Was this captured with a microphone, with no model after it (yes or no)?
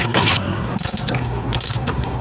no